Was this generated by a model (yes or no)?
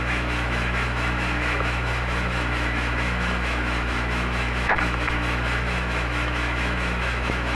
yes